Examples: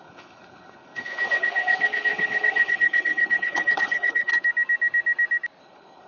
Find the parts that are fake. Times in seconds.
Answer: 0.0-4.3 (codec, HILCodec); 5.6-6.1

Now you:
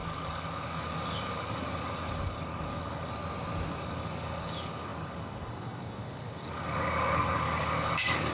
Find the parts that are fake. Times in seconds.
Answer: 0.0-3.2 (codec, DAC); 3.7-8.3

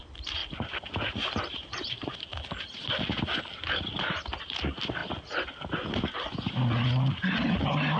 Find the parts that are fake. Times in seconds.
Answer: 0.0-0.4 (vocoder, BigVGAN v2); 4.0-5.0; 7.6-8.0

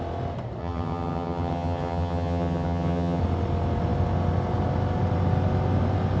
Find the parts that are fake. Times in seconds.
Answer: 0.6-3.2 (vocoder, HiFi-GAN)

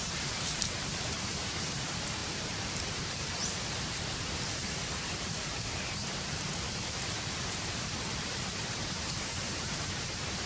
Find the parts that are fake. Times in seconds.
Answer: 0.0-6.5 (vocoder, BigVGAN v2); 7.5-10.5

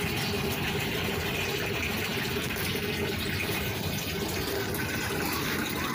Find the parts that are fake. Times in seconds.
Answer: 2.1-4.1 (vocoder, BigVGAN v2)

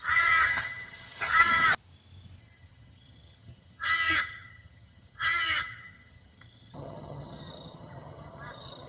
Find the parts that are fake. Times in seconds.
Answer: 0.0-1.7 (vocoder, HiFi-GAN); 2.4-8.9

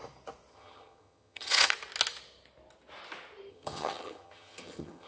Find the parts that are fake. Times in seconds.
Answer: 0.5-1.7 (vocoder, HiFi-GAN); 3.5-5.1